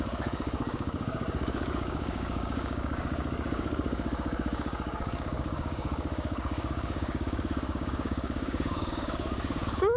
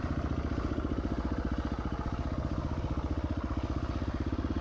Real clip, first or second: second